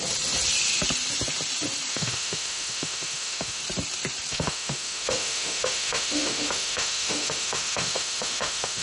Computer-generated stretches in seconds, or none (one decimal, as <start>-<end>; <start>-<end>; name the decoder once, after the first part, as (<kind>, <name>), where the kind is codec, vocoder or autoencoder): 1.9-3.6 (autoencoder, DAC-VAE); 4.3-8.8